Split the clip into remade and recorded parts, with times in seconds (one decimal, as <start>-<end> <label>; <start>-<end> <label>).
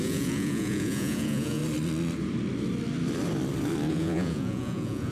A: 0.0-1.6 remade; 1.6-3.9 recorded; 3.9-5.1 remade